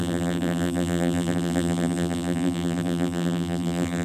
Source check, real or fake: fake